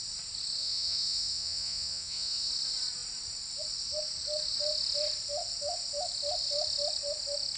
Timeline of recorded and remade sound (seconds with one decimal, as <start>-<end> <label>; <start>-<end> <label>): 0.0-0.6 recorded; 0.6-2.5 remade; 2.5-7.6 recorded